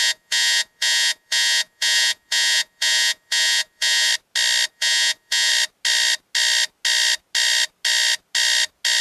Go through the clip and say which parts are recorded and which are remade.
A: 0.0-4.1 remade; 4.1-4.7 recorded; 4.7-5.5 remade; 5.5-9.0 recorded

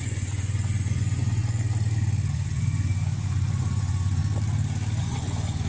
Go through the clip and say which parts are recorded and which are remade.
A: 0.0-1.4 remade; 1.4-2.3 recorded; 2.3-4.2 remade; 4.2-5.0 recorded; 5.0-5.7 remade

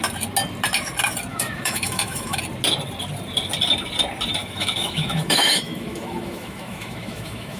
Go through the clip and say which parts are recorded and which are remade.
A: 0.0-1.3 recorded; 1.3-2.4 remade; 2.4-4.4 recorded; 4.4-7.6 remade

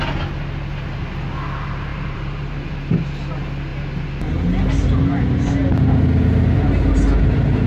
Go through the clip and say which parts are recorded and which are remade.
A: 0.0-1.9 recorded; 1.9-2.7 remade; 2.7-7.7 recorded

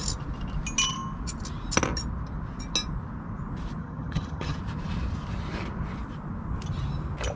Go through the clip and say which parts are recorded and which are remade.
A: 0.0-3.8 recorded; 3.8-4.6 remade; 4.6-7.4 recorded

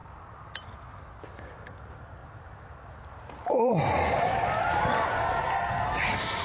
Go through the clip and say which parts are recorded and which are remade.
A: 0.0-2.2 recorded; 2.2-5.2 remade; 5.2-6.4 recorded

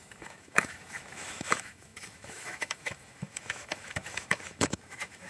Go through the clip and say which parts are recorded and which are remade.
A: 0.0-5.3 remade

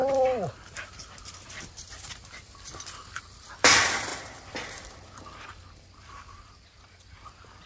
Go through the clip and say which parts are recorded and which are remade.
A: 0.0-0.8 remade; 0.8-4.1 recorded; 4.1-7.0 remade; 7.0-7.7 recorded